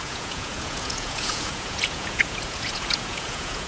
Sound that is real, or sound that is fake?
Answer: fake